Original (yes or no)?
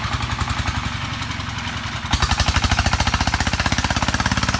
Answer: yes